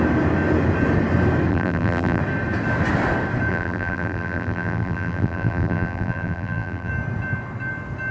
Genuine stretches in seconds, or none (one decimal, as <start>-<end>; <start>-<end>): 0.0-1.5; 2.2-3.5; 6.9-8.1